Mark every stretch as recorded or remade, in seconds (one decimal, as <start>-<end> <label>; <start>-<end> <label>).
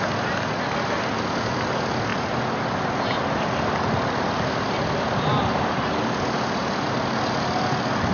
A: 0.0-8.1 recorded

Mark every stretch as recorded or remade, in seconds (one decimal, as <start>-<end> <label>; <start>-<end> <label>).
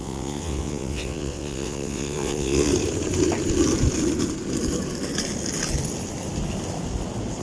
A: 0.0-2.7 remade; 2.7-7.4 recorded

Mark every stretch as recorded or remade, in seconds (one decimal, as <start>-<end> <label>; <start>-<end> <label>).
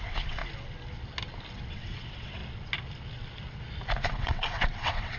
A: 0.0-0.4 remade; 0.4-1.7 recorded; 1.7-2.4 remade; 2.4-4.1 recorded; 4.1-5.2 remade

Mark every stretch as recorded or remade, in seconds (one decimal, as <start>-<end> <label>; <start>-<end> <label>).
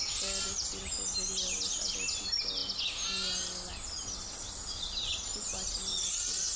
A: 0.0-5.9 recorded; 5.9-6.6 remade